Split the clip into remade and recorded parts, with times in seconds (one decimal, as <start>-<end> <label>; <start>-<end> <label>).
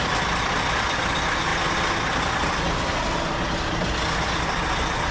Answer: 0.0-5.1 recorded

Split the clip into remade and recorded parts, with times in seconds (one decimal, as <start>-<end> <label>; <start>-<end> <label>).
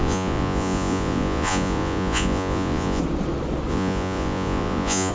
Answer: 0.0-3.0 remade; 3.0-3.7 recorded; 3.7-5.1 remade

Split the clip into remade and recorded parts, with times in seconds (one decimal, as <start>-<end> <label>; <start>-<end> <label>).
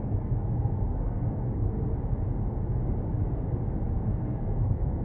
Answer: 0.0-1.9 remade; 1.9-3.9 recorded; 3.9-5.0 remade